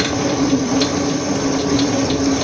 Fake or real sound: fake